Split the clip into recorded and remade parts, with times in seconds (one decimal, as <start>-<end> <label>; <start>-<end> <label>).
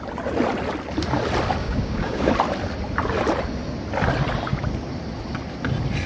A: 0.0-1.6 recorded; 1.6-2.3 remade; 2.3-6.1 recorded